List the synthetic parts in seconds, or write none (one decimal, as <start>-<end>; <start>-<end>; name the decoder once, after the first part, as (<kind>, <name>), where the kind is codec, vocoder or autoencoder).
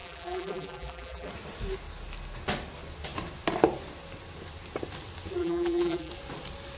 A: 0.0-1.3 (vocoder, BigVGAN v2); 5.4-6.1